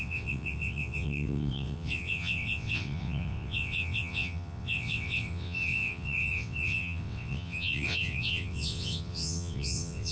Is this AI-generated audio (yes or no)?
yes